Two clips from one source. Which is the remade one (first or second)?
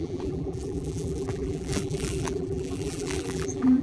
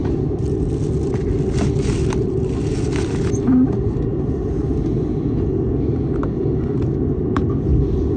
first